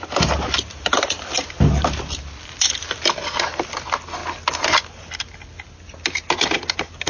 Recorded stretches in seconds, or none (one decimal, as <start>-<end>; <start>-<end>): 0.0-7.1